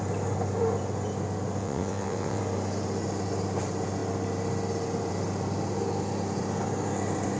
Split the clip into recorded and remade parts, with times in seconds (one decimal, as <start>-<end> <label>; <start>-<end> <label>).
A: 0.0-1.6 recorded; 1.6-2.4 remade; 2.4-7.4 recorded